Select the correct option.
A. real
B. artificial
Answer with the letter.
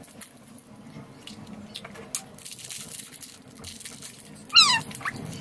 A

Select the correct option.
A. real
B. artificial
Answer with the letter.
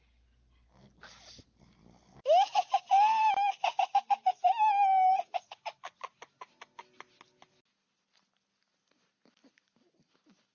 A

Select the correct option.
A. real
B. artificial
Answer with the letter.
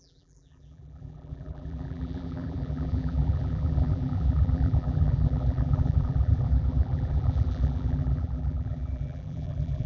B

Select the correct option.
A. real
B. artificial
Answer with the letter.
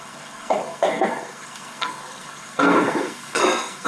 B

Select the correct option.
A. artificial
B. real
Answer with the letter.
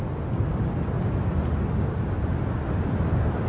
B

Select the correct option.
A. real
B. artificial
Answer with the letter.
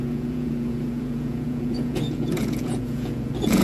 B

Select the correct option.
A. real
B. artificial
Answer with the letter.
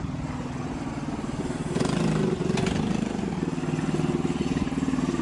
A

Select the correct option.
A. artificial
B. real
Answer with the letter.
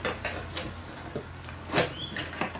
B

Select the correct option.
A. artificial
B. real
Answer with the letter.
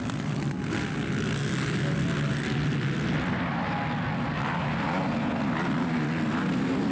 B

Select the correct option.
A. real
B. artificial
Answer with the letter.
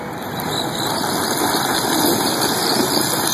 A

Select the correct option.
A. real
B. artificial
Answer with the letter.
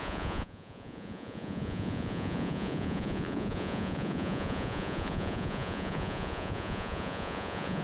B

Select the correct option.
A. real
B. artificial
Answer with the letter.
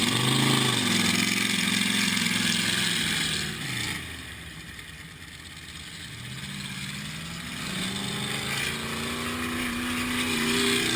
A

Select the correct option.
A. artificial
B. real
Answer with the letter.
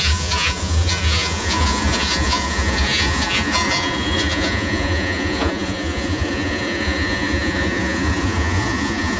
A